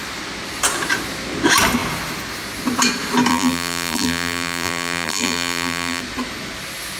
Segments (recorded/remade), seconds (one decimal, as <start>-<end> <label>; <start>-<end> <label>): 0.0-3.3 recorded; 3.3-6.0 remade; 6.0-7.0 recorded